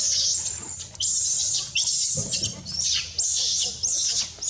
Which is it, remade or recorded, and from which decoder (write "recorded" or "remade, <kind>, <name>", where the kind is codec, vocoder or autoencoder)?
recorded